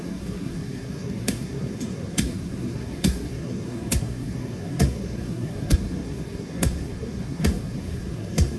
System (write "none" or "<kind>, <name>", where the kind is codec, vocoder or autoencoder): codec, SNAC